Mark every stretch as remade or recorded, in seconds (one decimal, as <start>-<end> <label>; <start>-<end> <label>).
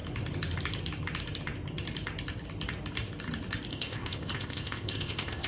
0.0-3.7 recorded; 3.7-5.5 remade